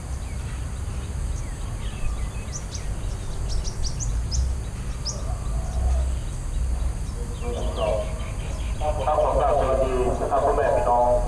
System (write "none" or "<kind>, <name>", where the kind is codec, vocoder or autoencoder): none